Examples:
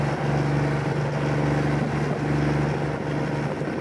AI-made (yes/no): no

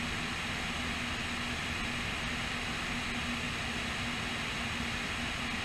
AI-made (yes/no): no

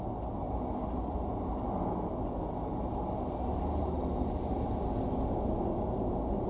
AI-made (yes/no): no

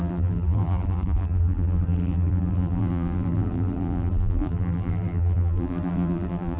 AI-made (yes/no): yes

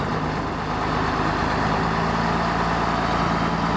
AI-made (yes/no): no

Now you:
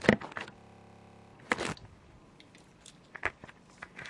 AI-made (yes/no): no